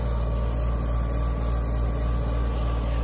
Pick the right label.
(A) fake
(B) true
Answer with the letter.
B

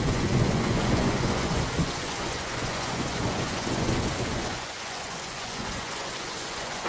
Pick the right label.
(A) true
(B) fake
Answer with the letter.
B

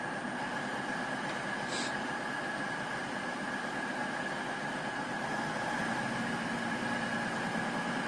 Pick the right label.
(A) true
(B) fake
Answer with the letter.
A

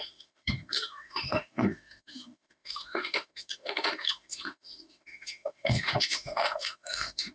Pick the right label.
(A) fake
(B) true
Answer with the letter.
A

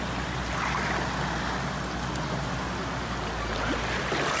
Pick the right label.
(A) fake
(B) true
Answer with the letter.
B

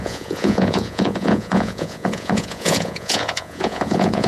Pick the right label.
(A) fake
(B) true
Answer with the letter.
A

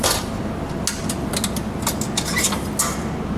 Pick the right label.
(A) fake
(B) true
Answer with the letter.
B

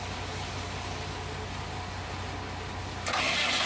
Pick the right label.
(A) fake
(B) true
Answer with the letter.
B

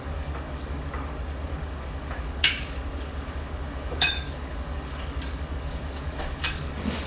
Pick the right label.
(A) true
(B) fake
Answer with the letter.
B